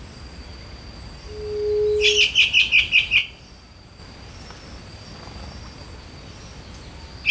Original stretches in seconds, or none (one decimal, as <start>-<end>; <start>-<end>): 0.0-3.2; 4.0-7.3